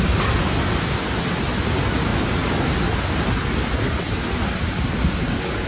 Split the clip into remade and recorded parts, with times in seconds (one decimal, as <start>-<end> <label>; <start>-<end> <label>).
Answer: 0.0-5.7 recorded